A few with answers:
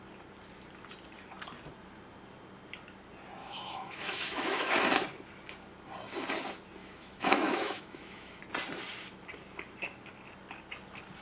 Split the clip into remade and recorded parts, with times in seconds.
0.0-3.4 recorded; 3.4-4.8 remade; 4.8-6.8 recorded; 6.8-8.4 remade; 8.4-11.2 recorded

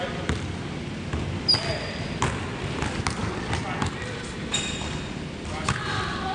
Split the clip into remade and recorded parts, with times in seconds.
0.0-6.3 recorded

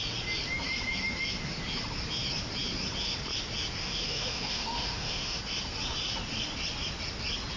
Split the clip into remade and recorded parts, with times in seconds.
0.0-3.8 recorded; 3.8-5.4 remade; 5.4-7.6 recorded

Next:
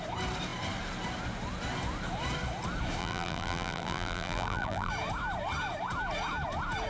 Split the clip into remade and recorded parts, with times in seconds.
0.0-3.0 recorded; 3.0-4.9 remade; 4.9-6.9 recorded

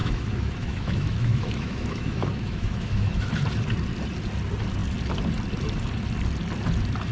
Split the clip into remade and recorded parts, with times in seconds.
0.0-3.3 remade; 3.3-7.1 recorded

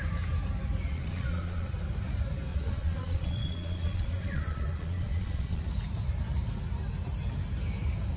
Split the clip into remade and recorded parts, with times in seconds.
0.0-0.9 recorded; 0.9-1.7 remade; 1.7-2.5 recorded; 2.5-5.7 remade; 5.7-8.2 recorded

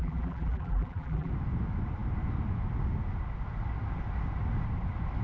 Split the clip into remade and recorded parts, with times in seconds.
0.0-1.3 remade; 1.3-5.2 recorded